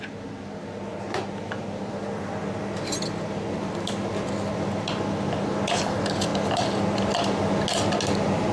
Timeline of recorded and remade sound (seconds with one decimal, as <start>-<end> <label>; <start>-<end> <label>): 0.0-8.5 recorded